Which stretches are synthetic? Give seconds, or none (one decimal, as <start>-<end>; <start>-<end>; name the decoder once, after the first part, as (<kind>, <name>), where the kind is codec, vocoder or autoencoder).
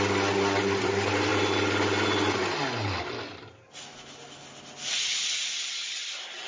none